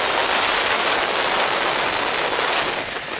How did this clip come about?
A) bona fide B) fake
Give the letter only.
A